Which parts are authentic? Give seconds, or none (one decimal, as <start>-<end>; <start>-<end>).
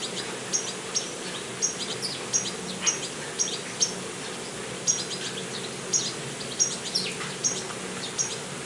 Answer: 0.0-8.7